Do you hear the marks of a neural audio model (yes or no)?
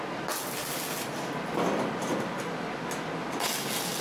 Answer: no